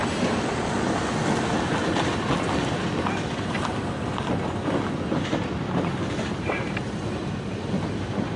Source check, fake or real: real